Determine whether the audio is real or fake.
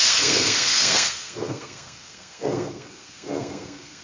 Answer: fake